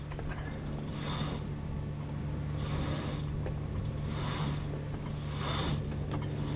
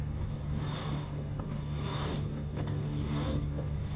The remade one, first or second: second